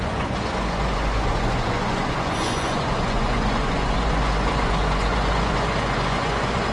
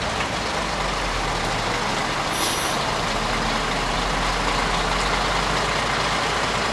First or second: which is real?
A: second